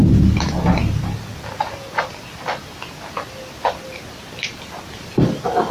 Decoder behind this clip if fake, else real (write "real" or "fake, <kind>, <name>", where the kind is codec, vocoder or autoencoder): real